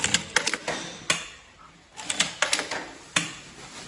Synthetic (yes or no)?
no